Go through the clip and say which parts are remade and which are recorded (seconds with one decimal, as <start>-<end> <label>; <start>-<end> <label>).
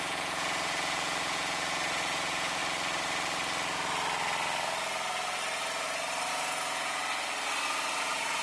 0.0-2.6 remade; 2.6-6.3 recorded; 6.3-7.0 remade; 7.0-8.0 recorded; 8.0-8.4 remade